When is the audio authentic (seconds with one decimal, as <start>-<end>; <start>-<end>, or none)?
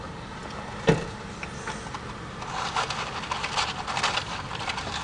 0.0-5.0